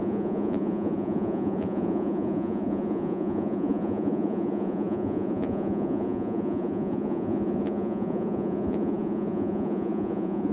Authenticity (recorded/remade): remade